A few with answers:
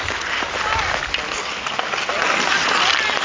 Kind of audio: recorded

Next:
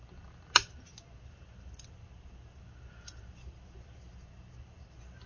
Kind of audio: recorded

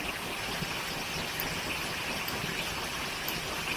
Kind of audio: recorded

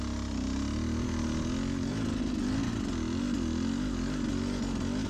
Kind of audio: recorded